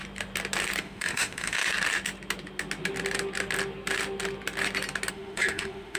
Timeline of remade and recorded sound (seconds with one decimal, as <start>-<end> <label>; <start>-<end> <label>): 0.0-0.8 recorded; 0.8-1.6 remade; 1.6-5.1 recorded; 5.1-6.0 remade